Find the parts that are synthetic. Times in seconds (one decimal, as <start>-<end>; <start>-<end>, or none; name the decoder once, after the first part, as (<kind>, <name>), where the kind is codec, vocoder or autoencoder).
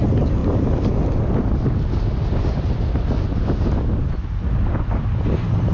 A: none